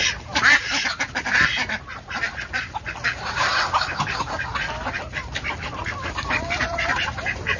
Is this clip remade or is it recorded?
remade